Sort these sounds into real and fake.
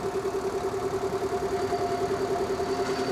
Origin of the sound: real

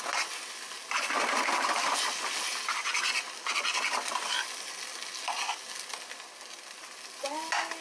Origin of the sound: real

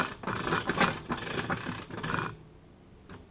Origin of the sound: real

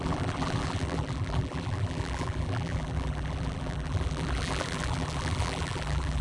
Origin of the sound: fake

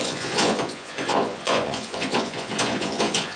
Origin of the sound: fake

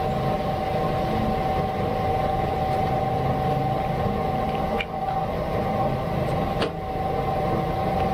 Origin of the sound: real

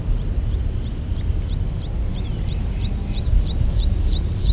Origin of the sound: real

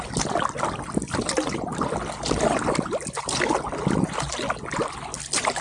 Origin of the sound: real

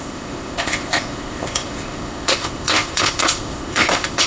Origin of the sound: fake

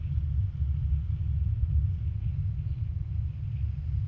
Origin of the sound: real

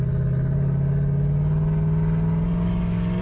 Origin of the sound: real